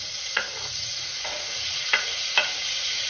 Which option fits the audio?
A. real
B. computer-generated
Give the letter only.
B